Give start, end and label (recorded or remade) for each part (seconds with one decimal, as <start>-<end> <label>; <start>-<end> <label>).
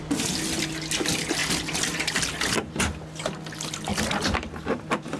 0.0-1.4 recorded; 1.4-2.3 remade; 2.3-3.9 recorded; 3.9-4.7 remade; 4.7-5.2 recorded